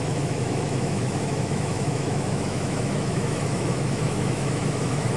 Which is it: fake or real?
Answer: fake